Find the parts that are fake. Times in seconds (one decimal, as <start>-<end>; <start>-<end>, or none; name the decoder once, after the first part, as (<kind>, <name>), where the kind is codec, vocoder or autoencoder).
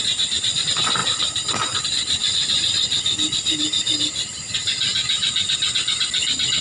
none